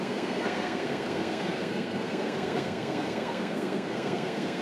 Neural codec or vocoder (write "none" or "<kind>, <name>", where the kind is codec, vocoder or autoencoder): codec, SNAC